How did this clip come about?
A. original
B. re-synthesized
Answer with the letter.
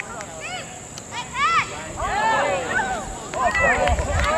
A